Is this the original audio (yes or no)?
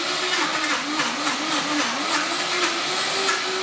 yes